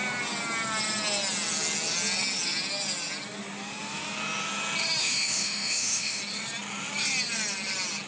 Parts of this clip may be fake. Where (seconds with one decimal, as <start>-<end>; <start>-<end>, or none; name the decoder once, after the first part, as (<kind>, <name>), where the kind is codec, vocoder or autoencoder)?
5.0-6.2 (autoencoder, DAC-VAE)